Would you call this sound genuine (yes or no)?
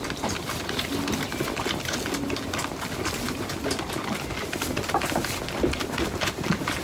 yes